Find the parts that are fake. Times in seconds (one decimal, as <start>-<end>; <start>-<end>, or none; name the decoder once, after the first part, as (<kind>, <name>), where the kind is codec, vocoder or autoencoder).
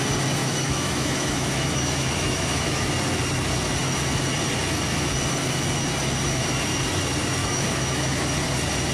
0.4-2.9 (autoencoder, DAC-VAE); 7.4-8.2